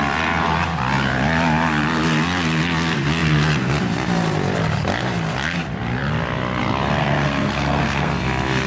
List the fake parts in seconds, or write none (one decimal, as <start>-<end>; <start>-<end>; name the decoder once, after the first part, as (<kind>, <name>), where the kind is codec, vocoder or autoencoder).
7.0-8.1 (codec, SNAC)

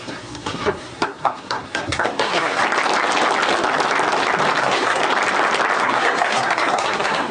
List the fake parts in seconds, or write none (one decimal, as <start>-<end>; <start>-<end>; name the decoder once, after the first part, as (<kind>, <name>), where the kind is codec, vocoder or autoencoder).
0.0-2.6 (codec, SNAC); 4.6-5.0; 5.8-7.3

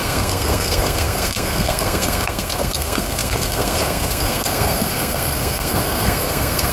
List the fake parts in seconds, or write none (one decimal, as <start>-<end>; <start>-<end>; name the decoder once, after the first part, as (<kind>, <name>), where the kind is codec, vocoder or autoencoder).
0.0-6.7 (codec, SNAC)